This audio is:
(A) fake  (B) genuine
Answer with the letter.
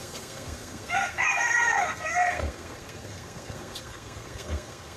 A